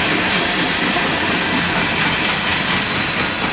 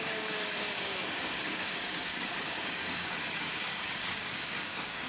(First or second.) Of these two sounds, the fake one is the second